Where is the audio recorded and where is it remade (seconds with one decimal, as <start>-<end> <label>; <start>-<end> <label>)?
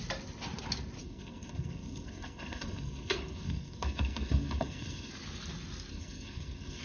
0.0-1.0 recorded; 1.0-5.1 remade; 5.1-5.9 recorded; 5.9-6.8 remade